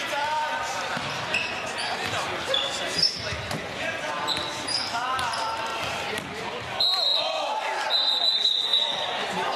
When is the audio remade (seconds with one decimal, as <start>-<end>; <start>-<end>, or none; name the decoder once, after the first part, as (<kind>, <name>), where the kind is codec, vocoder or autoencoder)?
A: 0.0-5.7 (vocoder, BigVGAN v2); 6.3-9.6